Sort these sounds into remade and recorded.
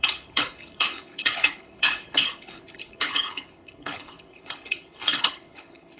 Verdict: remade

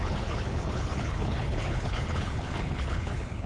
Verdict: remade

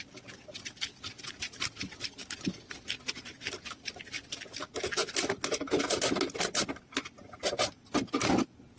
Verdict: recorded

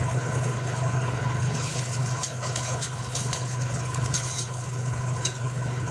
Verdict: remade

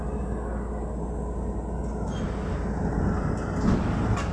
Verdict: recorded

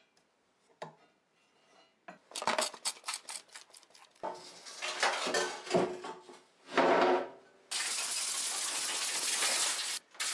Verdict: recorded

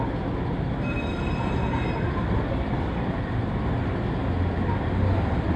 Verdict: recorded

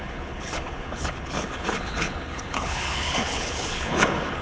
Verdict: remade